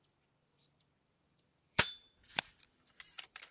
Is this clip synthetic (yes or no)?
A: yes